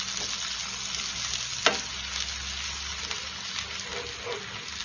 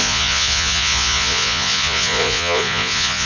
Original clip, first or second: first